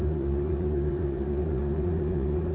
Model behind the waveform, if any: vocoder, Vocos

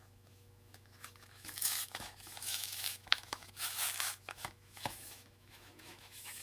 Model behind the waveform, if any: autoencoder, DAC-VAE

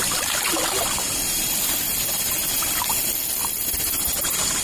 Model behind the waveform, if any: none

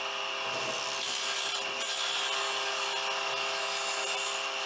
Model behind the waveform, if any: none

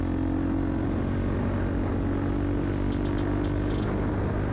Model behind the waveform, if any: none